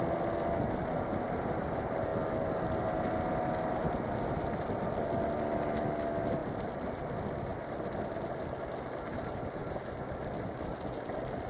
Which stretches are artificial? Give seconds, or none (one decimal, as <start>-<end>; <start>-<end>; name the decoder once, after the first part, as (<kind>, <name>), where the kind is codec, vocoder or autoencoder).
none